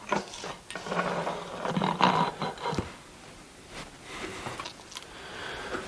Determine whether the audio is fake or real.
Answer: real